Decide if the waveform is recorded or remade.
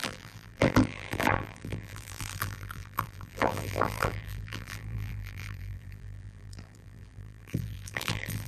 remade